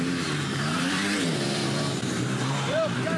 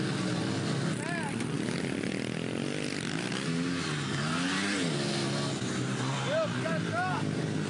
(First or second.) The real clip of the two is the second